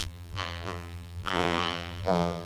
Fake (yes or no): yes